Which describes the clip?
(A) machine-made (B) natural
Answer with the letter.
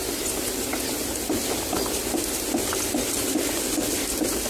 B